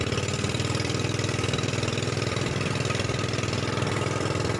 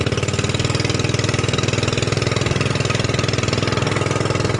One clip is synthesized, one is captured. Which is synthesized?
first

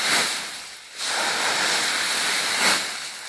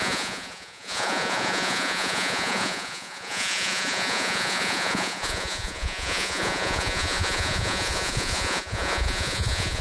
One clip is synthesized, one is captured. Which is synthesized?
second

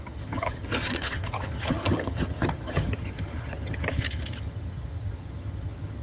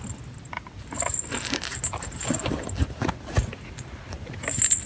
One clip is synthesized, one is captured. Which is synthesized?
first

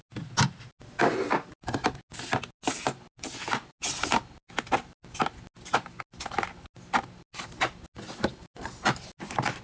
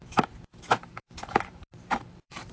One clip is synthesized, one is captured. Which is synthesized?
second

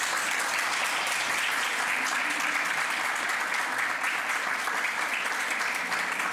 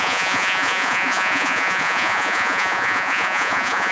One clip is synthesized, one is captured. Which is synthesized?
second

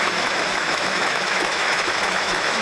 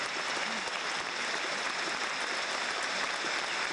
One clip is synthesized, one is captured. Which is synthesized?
first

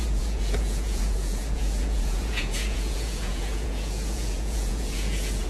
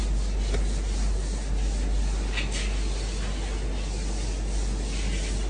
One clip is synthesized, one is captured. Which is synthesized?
first